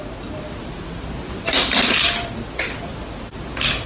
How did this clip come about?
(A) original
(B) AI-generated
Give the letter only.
A